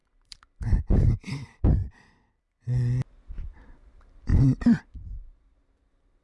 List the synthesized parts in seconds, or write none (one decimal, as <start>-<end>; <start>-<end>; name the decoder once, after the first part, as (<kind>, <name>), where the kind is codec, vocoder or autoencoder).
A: 0.0-2.3 (vocoder, BigVGAN v2); 4.3-4.8